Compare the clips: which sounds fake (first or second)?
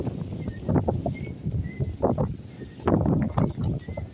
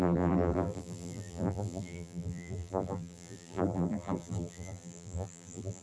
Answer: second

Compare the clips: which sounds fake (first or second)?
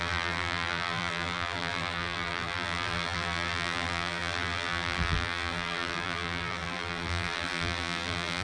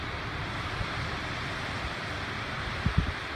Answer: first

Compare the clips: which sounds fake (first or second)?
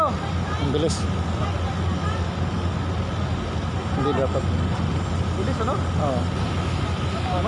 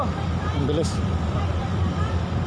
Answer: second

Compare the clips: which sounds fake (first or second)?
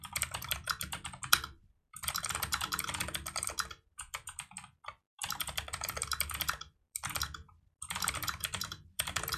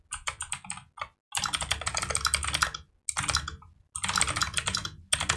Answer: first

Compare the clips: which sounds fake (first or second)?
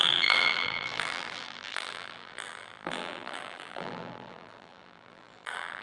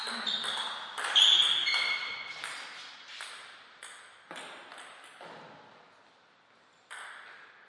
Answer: first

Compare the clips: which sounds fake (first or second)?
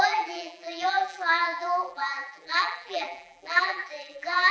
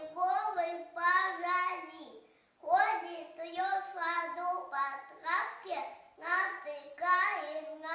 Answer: first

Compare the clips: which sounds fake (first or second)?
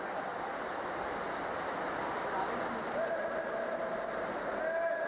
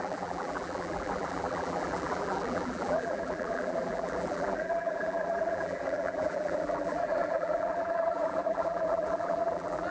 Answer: second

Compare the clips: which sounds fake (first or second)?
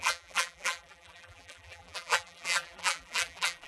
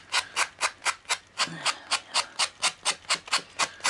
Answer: first